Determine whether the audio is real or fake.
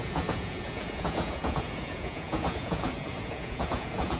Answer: fake